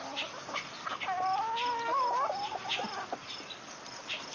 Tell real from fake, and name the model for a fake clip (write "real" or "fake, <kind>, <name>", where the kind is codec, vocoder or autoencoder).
real